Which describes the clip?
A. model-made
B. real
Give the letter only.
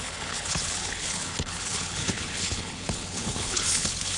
A